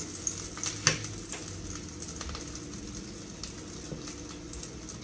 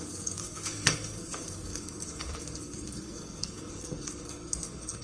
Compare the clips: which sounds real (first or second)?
first